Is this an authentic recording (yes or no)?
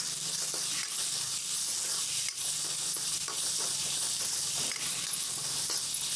yes